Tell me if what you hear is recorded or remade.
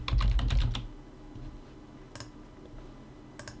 recorded